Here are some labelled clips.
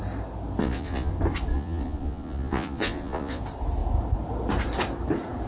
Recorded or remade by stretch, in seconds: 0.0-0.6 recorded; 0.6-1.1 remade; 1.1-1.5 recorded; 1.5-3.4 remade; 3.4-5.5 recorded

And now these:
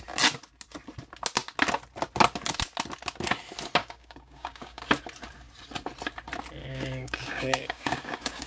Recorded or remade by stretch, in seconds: 0.0-3.8 recorded; 3.8-4.8 remade; 4.8-6.6 recorded; 6.6-8.5 remade

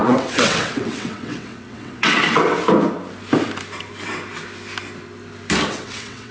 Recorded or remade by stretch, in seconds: 0.0-2.6 remade; 2.6-5.7 recorded; 5.7-6.3 remade

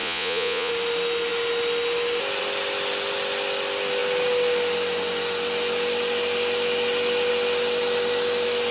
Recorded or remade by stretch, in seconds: 0.0-0.7 remade; 0.7-8.7 recorded

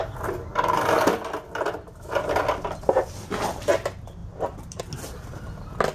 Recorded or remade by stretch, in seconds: 0.0-4.2 recorded; 4.2-4.8 remade; 4.8-5.9 recorded

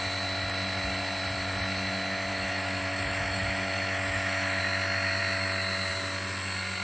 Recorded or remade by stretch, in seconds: 0.0-2.3 recorded; 2.3-4.6 remade; 4.6-6.8 recorded

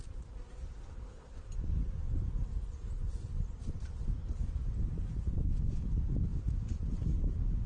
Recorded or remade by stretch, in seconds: 0.0-0.8 recorded; 0.8-1.4 remade; 1.4-7.7 recorded

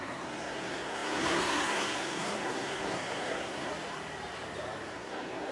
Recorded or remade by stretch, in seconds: 0.0-3.7 remade; 3.7-4.9 recorded; 4.9-5.5 remade